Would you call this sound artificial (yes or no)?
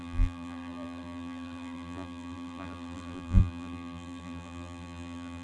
yes